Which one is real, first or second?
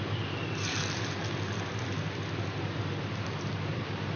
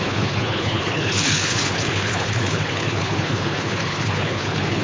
first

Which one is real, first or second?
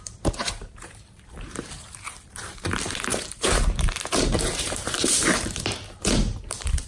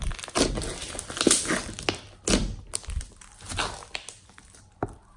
second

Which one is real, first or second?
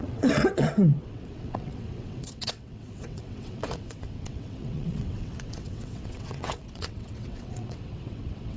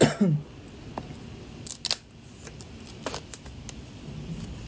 second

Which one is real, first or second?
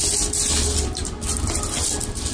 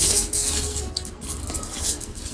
first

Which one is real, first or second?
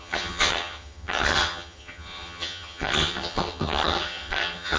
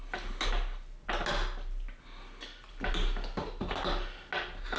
second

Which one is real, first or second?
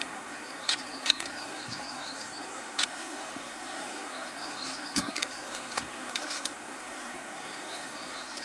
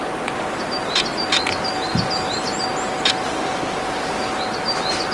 second